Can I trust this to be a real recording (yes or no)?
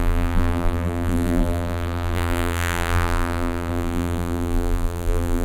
no